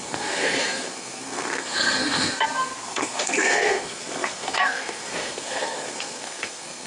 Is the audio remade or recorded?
remade